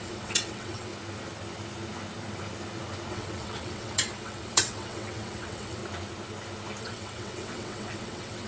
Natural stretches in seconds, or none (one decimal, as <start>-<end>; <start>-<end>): 0.9-3.1; 5.8-6.8